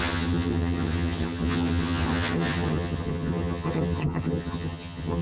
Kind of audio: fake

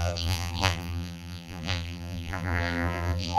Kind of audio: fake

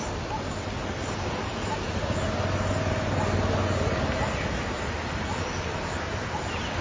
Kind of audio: real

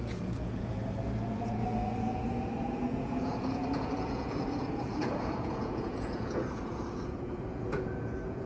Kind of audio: fake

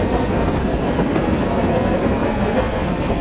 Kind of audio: fake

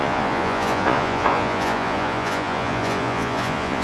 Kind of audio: fake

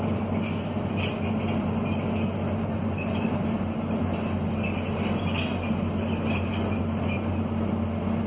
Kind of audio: real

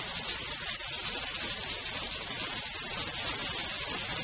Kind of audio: real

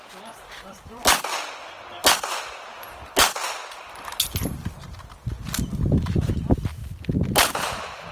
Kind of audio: real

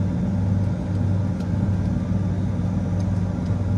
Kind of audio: real